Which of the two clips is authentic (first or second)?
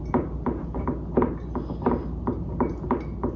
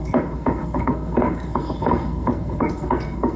first